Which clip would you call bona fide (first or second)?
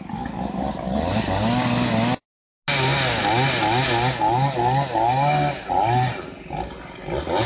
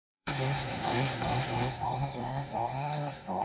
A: first